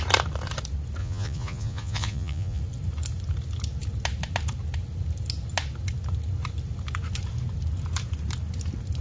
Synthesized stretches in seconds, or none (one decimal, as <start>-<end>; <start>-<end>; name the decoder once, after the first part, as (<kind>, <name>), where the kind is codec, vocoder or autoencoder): 1.0-2.6 (vocoder, Vocos)